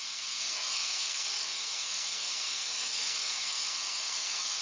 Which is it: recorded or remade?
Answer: remade